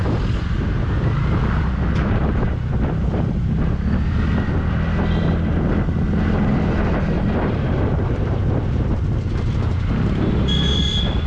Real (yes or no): yes